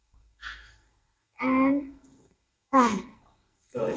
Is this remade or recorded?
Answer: remade